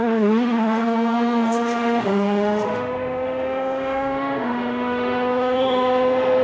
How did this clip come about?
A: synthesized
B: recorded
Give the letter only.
A